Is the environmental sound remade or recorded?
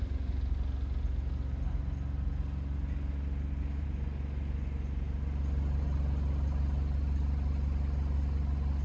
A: recorded